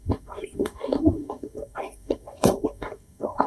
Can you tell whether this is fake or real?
fake